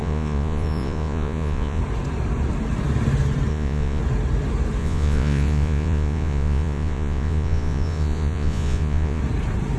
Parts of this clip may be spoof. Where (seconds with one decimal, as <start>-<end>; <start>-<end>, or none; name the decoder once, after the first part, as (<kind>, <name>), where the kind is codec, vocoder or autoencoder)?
0.0-1.8 (vocoder, Vocos); 3.5-4.0; 4.8-9.2